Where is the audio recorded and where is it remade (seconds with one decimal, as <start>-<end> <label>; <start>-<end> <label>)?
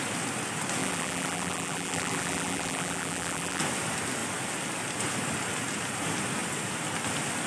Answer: 0.0-0.8 recorded; 0.8-3.6 remade; 3.6-7.5 recorded